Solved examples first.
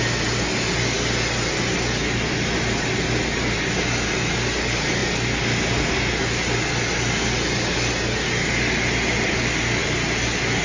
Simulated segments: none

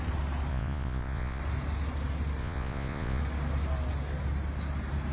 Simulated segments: 0.5-1.4 (vocoder, Vocos); 2.4-3.2

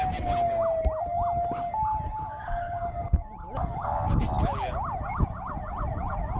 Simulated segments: none

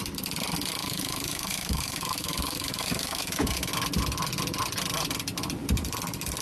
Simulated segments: 0.8-3.7 (autoencoder, DAC-VAE)

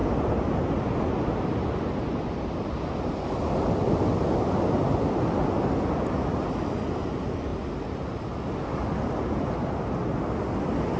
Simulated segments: none

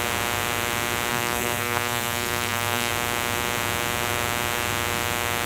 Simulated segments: 1.1-2.9 (codec, SNAC)

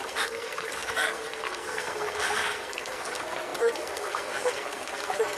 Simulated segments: 0.0-5.4 (codec, SNAC)